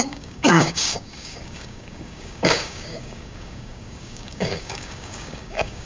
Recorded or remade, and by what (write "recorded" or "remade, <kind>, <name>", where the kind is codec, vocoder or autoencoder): remade, codec, DAC